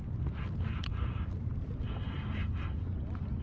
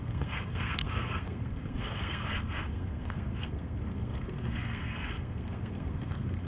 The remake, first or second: second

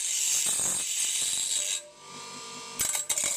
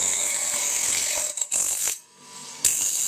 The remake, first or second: second